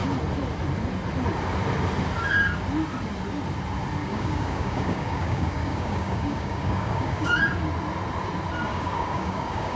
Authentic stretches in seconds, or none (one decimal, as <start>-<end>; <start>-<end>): 0.0-4.0; 7.4-8.7